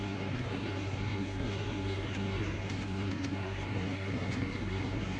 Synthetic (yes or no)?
yes